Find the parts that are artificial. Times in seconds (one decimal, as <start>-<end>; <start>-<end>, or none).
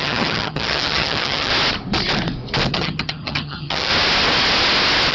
0.0-1.5; 2.7-3.9